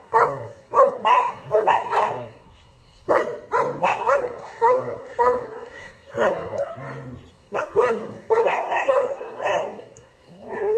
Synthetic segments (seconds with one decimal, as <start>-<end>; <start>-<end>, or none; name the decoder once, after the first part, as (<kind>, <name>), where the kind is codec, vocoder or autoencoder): 0.0-3.2 (codec, SNAC); 3.8-6.7; 7.3-10.8

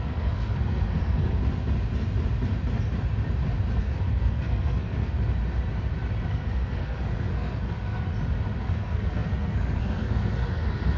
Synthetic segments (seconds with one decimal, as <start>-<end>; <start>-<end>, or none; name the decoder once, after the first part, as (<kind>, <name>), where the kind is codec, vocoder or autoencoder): 0.0-1.4 (codec, SNAC); 3.8-5.2; 6.3-8.1; 8.6-11.0

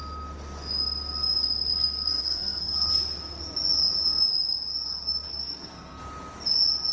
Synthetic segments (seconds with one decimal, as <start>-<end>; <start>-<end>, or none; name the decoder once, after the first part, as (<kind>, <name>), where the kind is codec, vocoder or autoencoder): 2.2-2.9 (codec, SNAC); 5.3-6.0

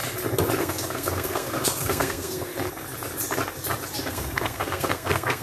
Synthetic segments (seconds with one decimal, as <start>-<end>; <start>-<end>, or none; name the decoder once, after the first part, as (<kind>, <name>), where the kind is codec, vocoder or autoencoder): 0.6-2.5 (codec, SNAC); 4.1-5.4

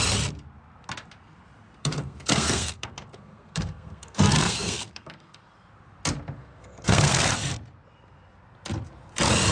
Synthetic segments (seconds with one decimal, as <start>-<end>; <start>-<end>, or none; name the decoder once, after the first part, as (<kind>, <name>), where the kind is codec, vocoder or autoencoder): 1.8-5.4 (codec, SNAC); 6.4-7.2

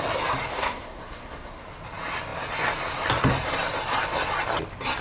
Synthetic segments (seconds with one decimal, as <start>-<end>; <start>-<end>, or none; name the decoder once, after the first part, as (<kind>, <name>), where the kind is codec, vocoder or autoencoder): 0.5-1.6 (codec, SNAC)

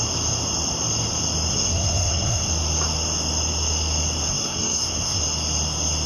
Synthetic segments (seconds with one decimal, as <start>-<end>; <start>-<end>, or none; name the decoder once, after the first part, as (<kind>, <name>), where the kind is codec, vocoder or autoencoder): 1.5-2.5 (codec, SNAC); 4.3-5.2